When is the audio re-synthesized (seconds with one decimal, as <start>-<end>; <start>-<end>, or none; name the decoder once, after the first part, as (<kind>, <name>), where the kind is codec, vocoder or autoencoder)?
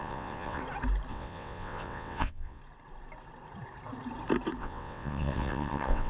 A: 0.0-0.6 (vocoder, WaveNeXt); 1.1-2.6; 4.6-6.1